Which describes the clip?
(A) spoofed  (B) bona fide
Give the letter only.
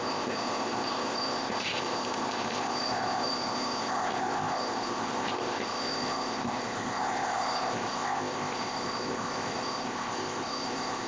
A